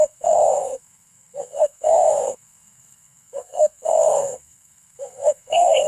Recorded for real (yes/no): no